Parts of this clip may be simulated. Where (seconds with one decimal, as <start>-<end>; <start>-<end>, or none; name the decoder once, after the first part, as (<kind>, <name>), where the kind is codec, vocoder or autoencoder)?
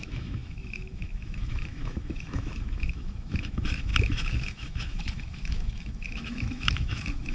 0.0-7.3 (autoencoder, DAC-VAE)